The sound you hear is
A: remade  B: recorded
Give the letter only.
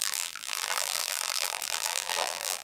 A